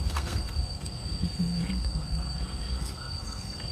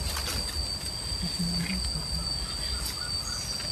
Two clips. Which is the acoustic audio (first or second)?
second